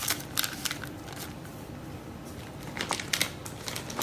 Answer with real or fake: real